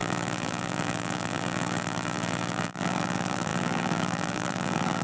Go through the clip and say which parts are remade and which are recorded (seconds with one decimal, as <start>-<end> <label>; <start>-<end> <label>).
0.0-5.0 remade